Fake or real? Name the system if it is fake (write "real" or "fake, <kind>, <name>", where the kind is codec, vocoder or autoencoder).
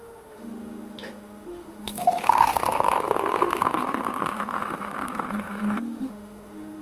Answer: fake, autoencoder, DAC-VAE